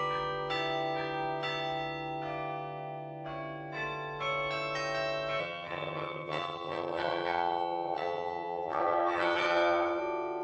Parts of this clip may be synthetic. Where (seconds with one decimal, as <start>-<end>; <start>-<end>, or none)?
5.4-10.0